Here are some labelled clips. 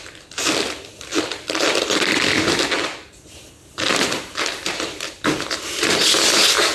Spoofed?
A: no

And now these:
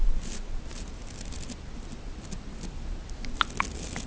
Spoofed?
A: no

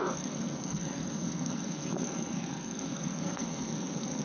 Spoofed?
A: yes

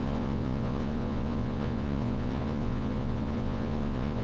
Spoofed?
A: yes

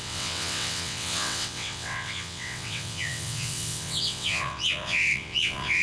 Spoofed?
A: yes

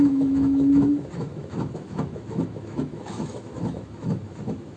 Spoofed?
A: yes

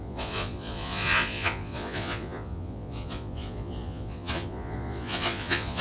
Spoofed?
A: yes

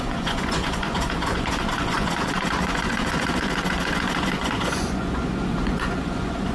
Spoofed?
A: yes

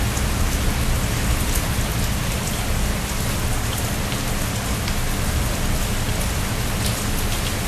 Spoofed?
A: no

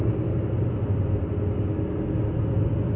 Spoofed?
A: no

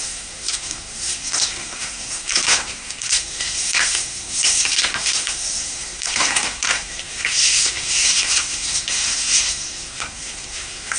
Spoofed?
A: yes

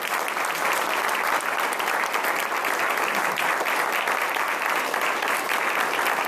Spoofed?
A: no